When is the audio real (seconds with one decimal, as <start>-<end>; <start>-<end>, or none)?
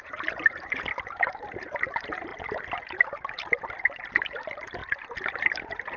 2.3-4.1; 4.8-5.3